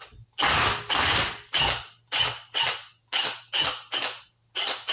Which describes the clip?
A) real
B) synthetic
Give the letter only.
A